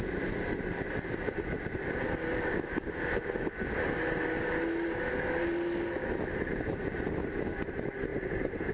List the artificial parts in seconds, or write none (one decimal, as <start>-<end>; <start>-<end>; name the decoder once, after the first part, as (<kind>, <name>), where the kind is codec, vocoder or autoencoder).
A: none